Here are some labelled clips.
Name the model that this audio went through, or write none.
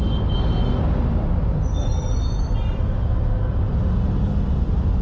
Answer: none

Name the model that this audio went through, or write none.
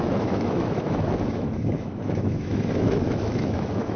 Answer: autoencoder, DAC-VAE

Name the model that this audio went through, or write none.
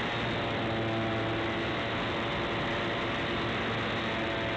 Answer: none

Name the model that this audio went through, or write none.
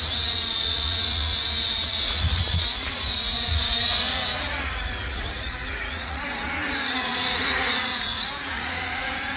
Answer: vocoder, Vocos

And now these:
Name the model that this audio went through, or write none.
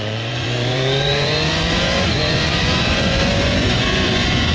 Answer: vocoder, Vocos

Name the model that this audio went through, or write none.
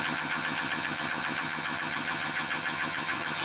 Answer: vocoder, HiFi-GAN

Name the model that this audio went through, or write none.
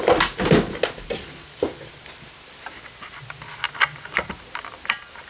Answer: none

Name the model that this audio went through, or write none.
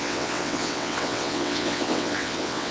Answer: vocoder, WaveNeXt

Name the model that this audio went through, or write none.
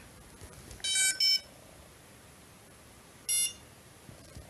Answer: none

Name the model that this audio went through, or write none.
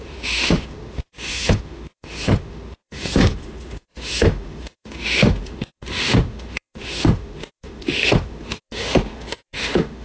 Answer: autoencoder, DAC-VAE